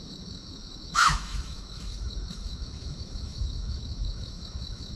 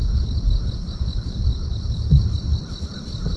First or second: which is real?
second